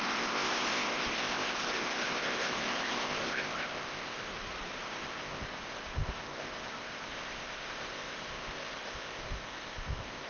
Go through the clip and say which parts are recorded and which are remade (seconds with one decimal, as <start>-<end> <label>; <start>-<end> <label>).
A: 0.0-4.3 remade; 4.3-4.8 recorded; 4.8-10.3 remade